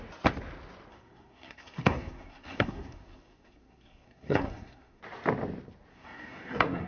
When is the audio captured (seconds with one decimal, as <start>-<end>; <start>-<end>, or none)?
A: 0.0-0.9; 5.0-5.9